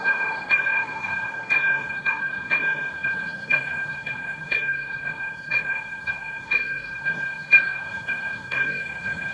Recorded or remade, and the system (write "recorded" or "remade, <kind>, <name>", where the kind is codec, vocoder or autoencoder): remade, codec, SNAC